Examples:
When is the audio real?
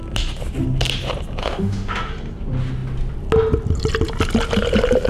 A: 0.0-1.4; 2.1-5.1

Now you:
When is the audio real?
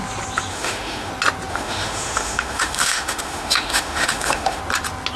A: 0.0-0.5; 1.1-1.5; 4.6-5.2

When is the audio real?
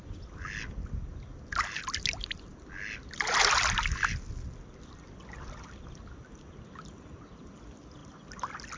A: 0.0-8.8